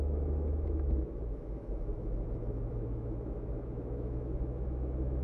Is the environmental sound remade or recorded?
remade